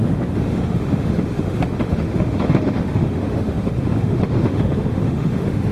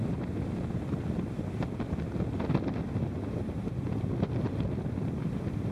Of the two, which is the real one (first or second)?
second